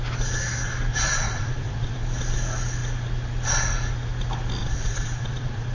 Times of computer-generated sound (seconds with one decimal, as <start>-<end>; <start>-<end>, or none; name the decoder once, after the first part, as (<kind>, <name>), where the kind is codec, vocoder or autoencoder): 0.9-2.0 (vocoder, Vocos); 4.6-5.7